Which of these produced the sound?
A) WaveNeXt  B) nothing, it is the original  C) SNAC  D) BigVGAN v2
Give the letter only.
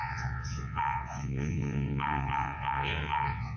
A